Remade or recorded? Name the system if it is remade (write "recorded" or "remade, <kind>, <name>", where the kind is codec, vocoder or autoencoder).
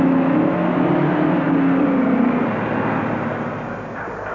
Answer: recorded